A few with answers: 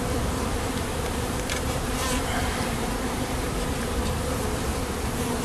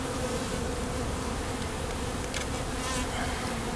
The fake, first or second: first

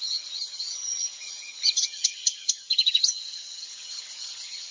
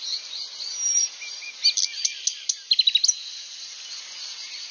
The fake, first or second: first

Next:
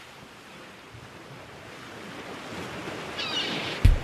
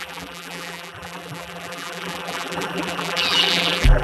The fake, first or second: second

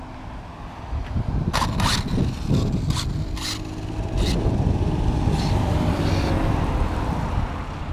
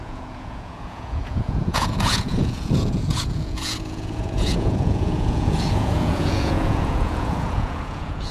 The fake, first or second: second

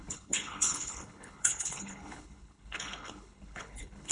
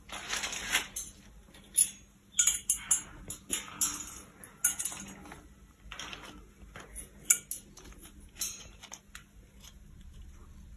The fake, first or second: first